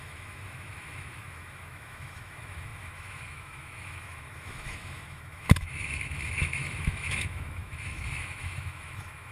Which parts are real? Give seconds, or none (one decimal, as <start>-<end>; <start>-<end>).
none